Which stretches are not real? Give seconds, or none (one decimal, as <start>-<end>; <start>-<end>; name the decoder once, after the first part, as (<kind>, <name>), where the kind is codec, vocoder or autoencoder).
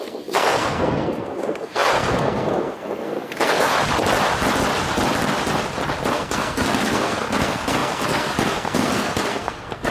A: 0.0-3.7 (codec, SNAC); 6.1-9.9